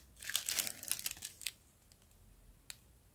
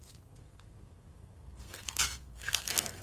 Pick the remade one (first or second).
second